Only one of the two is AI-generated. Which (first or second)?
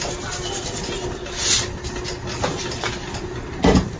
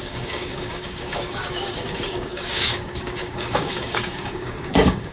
second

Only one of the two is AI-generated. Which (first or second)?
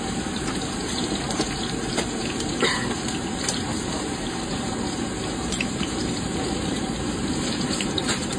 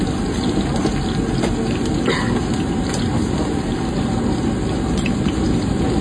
first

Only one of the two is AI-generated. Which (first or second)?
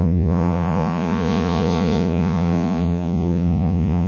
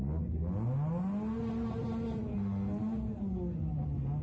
first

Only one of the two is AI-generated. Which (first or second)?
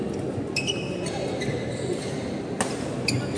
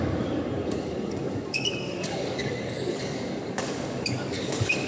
second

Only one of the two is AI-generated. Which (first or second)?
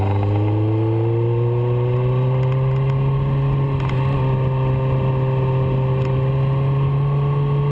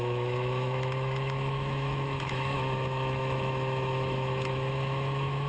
second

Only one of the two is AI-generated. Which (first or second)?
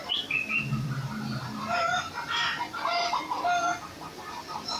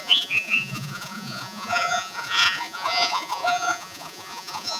second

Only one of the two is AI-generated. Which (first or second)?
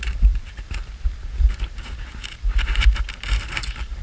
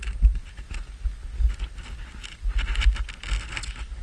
first